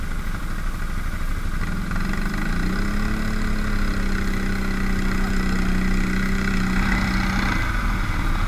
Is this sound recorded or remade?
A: recorded